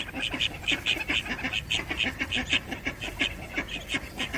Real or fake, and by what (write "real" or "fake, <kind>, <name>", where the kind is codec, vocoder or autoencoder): real